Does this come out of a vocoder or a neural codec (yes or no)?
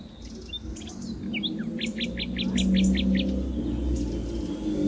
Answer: no